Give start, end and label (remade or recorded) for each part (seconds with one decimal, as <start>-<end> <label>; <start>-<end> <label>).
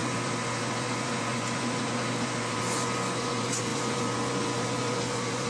0.0-5.5 remade